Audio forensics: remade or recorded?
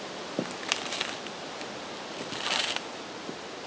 recorded